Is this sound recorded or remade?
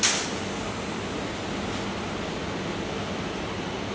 recorded